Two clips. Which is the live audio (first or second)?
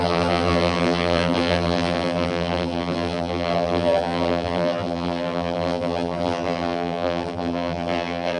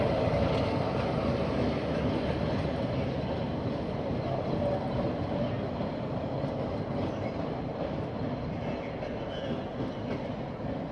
second